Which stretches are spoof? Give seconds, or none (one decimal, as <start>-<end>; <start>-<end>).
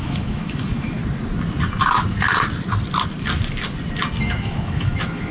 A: 0.0-1.0; 4.2-5.3